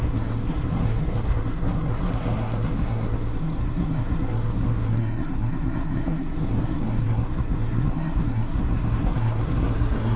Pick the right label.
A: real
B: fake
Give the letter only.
B